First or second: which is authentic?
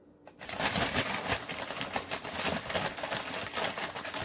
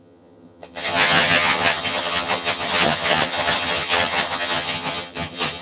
first